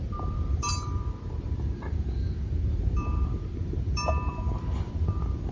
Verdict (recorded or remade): remade